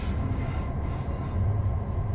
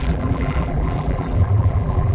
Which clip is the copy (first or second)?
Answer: second